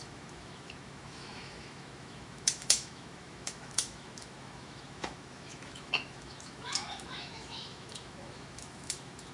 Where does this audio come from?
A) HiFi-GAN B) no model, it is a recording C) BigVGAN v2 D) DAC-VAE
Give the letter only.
D